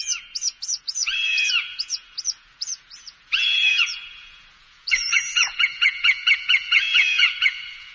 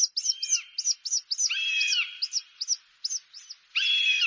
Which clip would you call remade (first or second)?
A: first